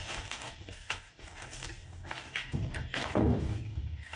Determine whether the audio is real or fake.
fake